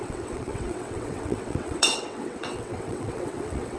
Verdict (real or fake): fake